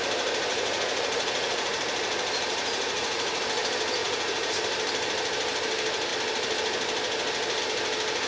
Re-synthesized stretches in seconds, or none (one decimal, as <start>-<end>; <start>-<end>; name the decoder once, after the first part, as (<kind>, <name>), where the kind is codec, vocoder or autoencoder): 0.5-1.8 (vocoder, Vocos); 2.5-3.4; 4.0-4.5